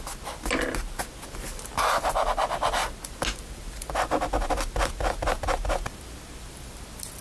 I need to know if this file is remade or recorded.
recorded